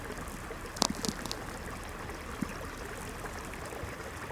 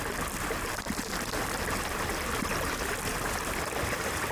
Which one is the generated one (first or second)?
second